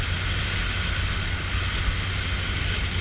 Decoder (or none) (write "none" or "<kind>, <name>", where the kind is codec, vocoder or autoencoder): none